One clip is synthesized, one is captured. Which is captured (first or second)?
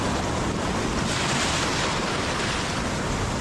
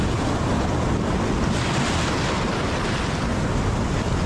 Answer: second